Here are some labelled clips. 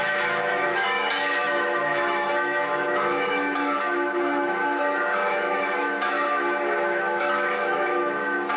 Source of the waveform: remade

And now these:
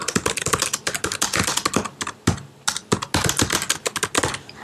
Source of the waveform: recorded